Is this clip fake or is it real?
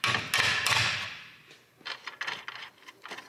real